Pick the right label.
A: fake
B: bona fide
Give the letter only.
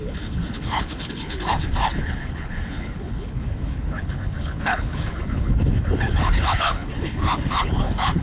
A